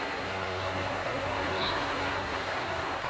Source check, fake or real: fake